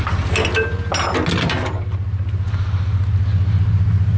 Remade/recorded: recorded